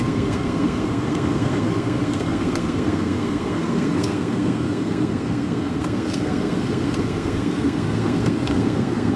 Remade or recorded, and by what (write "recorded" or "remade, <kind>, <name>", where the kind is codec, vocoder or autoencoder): remade, codec, SNAC